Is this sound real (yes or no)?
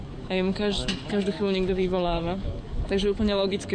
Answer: no